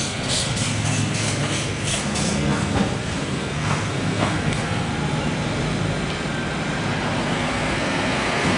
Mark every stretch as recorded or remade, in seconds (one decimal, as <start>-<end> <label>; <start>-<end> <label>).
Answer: 0.0-4.9 remade; 4.9-7.2 recorded; 7.2-8.6 remade